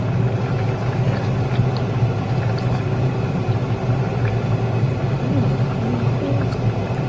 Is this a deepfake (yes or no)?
no